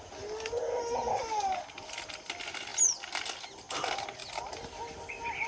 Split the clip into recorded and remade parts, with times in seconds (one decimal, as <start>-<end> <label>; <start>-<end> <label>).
0.0-5.5 recorded